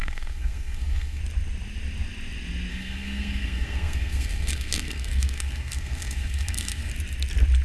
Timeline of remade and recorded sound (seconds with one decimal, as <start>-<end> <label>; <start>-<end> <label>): 0.0-1.2 remade; 1.2-2.7 recorded; 2.7-6.9 remade; 6.9-7.6 recorded